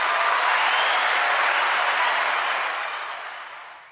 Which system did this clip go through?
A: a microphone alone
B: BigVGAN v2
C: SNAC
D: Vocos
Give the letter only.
A